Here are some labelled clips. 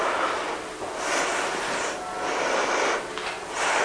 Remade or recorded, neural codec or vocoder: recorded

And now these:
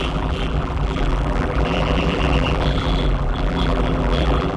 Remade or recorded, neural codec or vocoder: remade, vocoder, BigVGAN v2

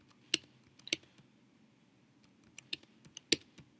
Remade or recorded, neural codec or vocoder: recorded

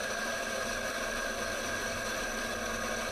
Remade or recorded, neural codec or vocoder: remade, vocoder, BigVGAN v2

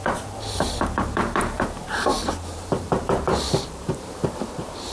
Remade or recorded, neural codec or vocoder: remade, vocoder, BigVGAN v2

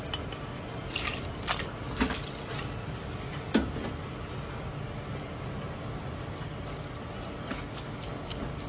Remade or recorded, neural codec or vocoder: recorded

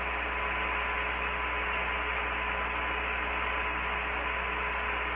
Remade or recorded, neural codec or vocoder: recorded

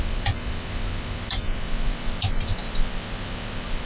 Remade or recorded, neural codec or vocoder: recorded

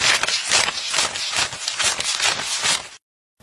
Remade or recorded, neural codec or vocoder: recorded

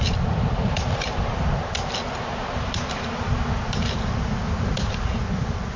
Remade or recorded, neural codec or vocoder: remade, vocoder, BigVGAN v2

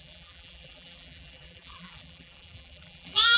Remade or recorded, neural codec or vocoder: remade, vocoder, BigVGAN v2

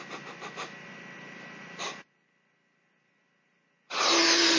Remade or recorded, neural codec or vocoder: recorded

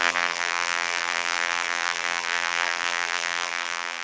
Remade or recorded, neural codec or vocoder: remade, vocoder, BigVGAN v2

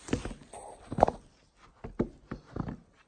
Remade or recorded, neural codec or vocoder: recorded